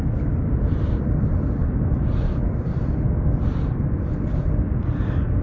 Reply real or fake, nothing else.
fake